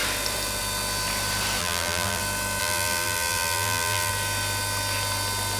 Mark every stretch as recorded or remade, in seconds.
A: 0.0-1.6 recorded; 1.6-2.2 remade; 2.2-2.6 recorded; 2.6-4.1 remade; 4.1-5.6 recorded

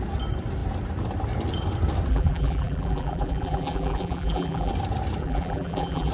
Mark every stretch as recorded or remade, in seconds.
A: 0.0-2.1 recorded; 2.1-4.7 remade; 4.7-5.2 recorded; 5.2-6.1 remade

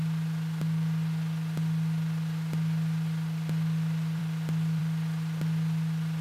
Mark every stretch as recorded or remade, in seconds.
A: 0.0-6.2 recorded

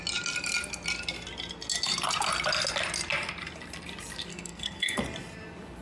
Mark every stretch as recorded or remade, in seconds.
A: 0.0-4.3 recorded; 4.3-5.0 remade; 5.0-5.8 recorded

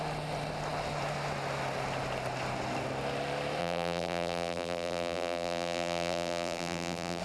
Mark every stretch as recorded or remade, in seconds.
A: 0.0-3.6 recorded; 3.6-7.2 remade

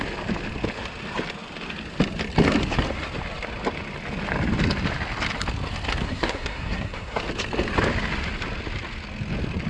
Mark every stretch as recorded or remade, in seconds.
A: 0.0-6.0 recorded; 6.0-7.2 remade; 7.2-9.7 recorded